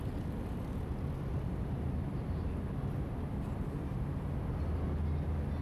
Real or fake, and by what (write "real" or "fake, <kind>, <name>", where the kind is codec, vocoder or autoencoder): real